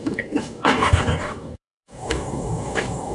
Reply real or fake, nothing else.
fake